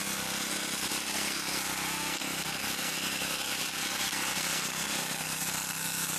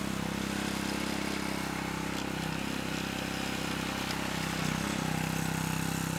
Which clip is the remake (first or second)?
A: first